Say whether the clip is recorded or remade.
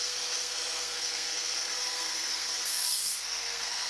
remade